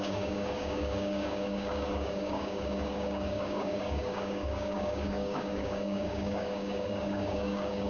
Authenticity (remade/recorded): remade